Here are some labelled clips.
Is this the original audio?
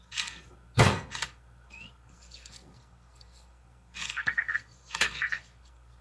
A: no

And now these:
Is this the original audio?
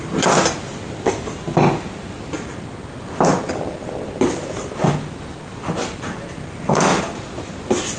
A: yes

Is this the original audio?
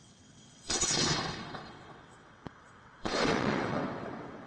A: no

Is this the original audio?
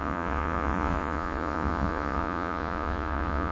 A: no